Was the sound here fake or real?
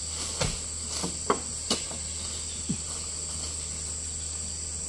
real